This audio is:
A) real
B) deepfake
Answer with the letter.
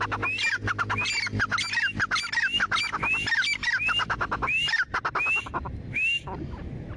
A